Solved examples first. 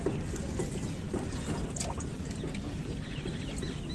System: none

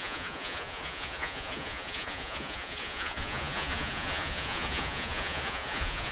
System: vocoder, Vocos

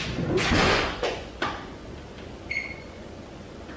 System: vocoder, Vocos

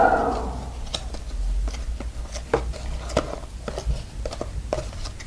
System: none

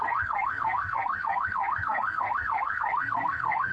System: codec, SNAC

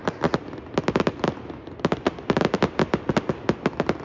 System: none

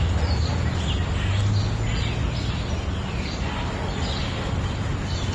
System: none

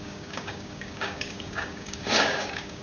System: codec, DAC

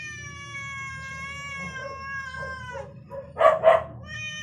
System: none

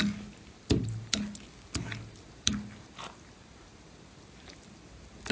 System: none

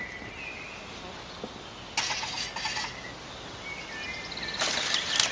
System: none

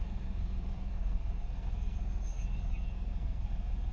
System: codec, SNAC